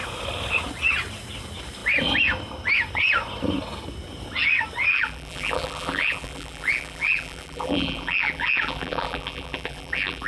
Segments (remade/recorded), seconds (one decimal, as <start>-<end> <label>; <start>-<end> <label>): 0.0-4.9 recorded; 4.9-10.3 remade